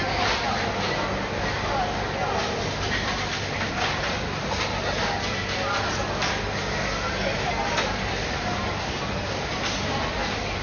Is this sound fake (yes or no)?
no